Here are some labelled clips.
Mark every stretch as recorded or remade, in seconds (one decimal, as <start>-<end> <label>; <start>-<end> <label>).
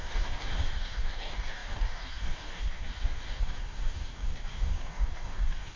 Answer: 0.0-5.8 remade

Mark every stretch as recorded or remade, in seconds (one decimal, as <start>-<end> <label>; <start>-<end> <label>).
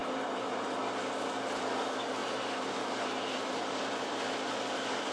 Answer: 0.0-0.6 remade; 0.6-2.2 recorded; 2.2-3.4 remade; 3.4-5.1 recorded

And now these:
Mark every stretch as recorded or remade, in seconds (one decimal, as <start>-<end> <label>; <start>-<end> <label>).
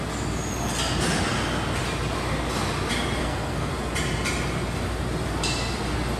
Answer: 0.0-3.2 recorded; 3.2-3.7 remade; 3.7-6.2 recorded